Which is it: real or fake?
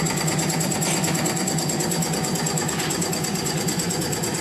fake